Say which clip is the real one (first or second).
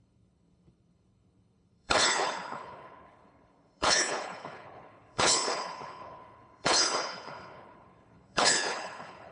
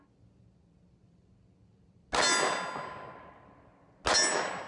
second